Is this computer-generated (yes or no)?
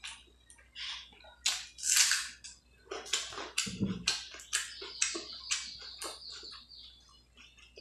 no